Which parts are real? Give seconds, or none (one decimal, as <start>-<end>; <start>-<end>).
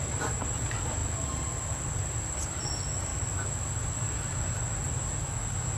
0.0-5.8